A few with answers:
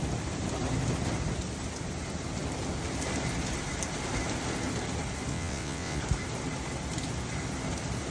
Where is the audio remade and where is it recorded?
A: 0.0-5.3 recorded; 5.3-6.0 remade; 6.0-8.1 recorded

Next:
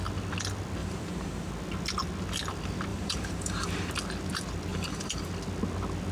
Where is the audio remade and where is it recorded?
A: 0.0-0.8 recorded; 0.8-1.5 remade; 1.5-2.9 recorded; 2.9-3.9 remade; 3.9-4.7 recorded; 4.7-5.3 remade; 5.3-6.1 recorded

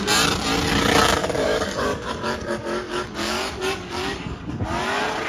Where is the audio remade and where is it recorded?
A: 0.0-1.2 recorded; 1.2-4.4 remade; 4.4-5.3 recorded

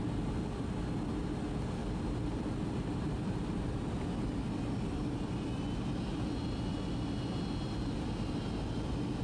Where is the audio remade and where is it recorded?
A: 0.0-1.8 recorded; 1.8-3.8 remade; 3.8-9.2 recorded

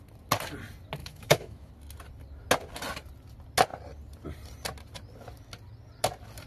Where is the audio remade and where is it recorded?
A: 0.0-1.0 recorded; 1.0-1.7 remade; 1.7-6.5 recorded

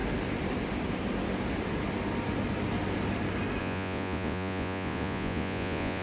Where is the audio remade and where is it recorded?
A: 0.0-3.6 recorded; 3.6-6.0 remade

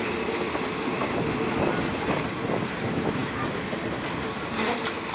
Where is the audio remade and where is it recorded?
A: 0.0-5.1 recorded

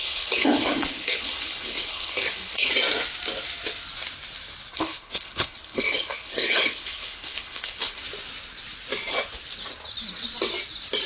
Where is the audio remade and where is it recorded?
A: 0.0-2.7 remade; 2.7-4.7 recorded; 4.7-8.0 remade; 8.0-11.1 recorded